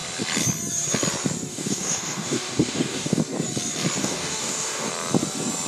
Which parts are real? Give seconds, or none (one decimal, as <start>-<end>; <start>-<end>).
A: 0.0-1.5; 3.2-4.0; 4.9-5.7